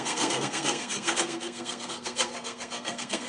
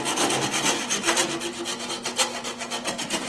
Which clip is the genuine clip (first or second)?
second